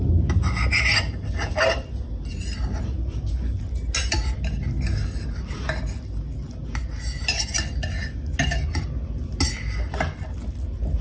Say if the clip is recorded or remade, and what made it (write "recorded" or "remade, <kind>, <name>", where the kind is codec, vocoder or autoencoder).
recorded